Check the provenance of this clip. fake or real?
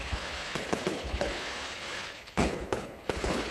fake